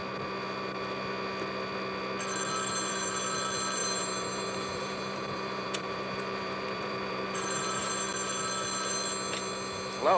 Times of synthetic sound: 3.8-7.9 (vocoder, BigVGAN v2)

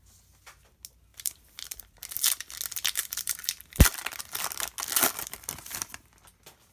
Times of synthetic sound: 1.1-1.8 (vocoder, BigVGAN v2); 3.0-4.0

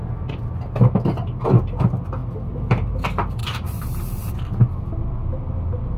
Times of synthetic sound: 3.4-4.3 (vocoder, BigVGAN v2)

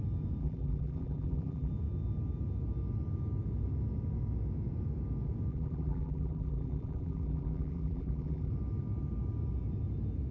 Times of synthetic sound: 0.4-1.7 (vocoder, BigVGAN v2); 5.5-8.5

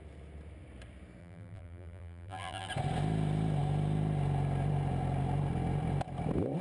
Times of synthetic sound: 1.2-2.7 (vocoder, BigVGAN v2)

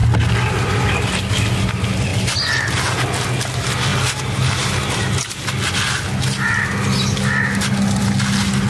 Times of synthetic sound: none

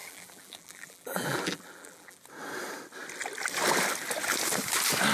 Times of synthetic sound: 0.0-2.2 (vocoder, BigVGAN v2)